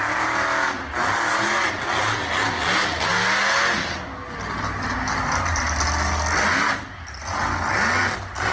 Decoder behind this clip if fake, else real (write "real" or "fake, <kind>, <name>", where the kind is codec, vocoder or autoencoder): real